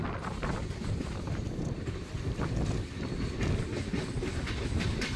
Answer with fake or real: real